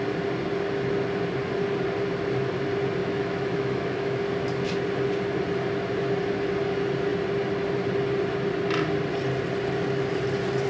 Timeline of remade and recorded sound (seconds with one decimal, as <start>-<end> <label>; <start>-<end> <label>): 0.0-3.0 recorded; 3.0-4.2 remade; 4.2-10.7 recorded